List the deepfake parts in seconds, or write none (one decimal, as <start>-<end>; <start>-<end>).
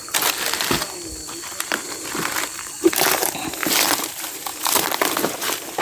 2.5-3.3; 4.5-5.1